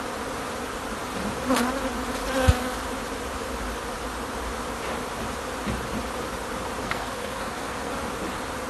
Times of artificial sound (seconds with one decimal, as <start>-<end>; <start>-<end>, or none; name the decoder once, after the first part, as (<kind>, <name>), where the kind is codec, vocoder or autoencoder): 6.8-7.9 (codec, SNAC)